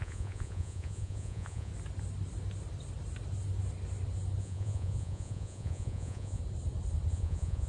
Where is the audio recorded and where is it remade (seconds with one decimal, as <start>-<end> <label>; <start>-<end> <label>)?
0.0-1.7 remade; 1.7-4.4 recorded; 4.4-6.4 remade; 6.4-7.1 recorded; 7.1-7.7 remade